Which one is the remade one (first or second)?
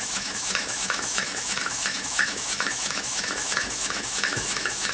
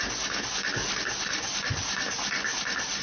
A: first